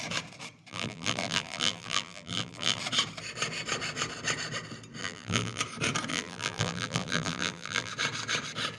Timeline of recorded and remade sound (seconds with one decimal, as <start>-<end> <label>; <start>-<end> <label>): 0.0-0.7 recorded; 0.7-2.8 remade; 2.8-5.0 recorded; 5.0-5.6 remade; 5.6-6.1 recorded; 6.1-7.9 remade; 7.9-8.8 recorded